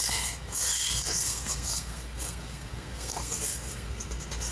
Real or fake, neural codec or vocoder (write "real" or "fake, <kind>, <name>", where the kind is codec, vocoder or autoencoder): fake, codec, SNAC